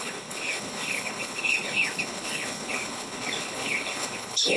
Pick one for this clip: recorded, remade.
remade